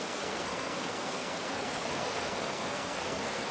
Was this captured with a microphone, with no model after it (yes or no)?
no